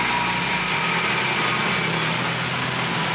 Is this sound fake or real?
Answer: real